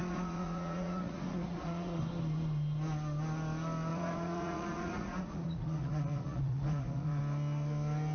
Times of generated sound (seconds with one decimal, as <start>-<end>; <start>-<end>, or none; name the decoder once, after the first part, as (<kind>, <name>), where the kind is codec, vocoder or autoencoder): 0.0-2.0 (vocoder, Vocos); 3.9-7.2